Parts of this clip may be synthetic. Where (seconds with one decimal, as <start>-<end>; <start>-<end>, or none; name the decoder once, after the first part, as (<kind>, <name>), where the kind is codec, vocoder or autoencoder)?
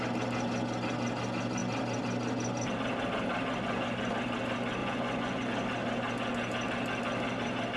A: 4.8-5.4 (vocoder, Vocos)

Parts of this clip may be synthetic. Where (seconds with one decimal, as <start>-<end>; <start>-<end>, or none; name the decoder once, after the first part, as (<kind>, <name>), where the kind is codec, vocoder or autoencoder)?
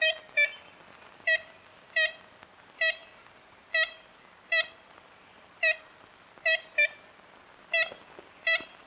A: none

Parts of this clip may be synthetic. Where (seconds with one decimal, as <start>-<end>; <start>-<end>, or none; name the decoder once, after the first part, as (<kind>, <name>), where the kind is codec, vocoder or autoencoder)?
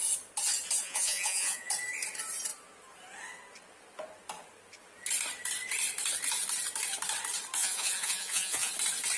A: 0.8-1.7 (vocoder, Vocos); 7.6-8.7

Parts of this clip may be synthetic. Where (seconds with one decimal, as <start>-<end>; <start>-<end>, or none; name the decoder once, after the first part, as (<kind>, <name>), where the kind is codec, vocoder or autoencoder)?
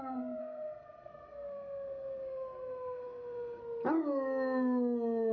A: 0.4-3.6 (codec, SNAC)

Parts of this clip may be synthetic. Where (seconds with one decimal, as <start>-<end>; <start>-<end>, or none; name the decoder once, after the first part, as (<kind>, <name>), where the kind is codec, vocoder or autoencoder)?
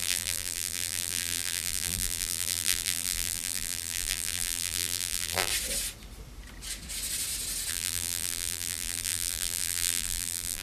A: 0.0-5.5 (vocoder, BigVGAN v2); 7.7-10.6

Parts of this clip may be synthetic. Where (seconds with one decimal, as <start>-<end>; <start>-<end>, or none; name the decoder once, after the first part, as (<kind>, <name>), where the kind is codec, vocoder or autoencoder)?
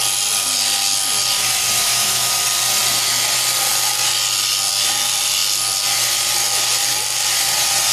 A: 1.8-2.3 (autoencoder, DAC-VAE)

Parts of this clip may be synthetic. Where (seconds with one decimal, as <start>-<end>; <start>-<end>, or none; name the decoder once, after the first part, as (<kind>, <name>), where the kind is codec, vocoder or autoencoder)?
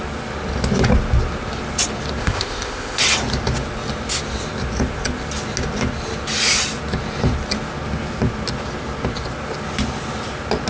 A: 2.2-3.0 (codec, ZipCodec)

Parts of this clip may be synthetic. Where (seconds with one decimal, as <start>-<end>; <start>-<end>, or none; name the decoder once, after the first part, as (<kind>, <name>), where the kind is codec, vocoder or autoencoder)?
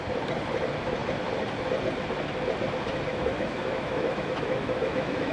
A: 3.1-5.3 (autoencoder, DAC-VAE)